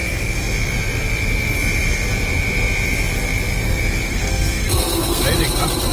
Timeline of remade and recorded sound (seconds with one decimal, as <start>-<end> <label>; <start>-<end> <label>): 0.0-4.1 recorded; 4.1-5.2 remade; 5.2-5.9 recorded